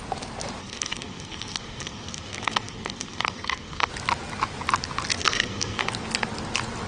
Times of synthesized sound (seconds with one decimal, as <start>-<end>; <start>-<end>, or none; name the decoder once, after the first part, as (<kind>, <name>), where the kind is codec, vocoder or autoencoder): 0.6-3.9 (codec, SNAC); 5.2-5.9